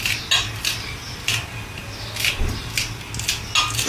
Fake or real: real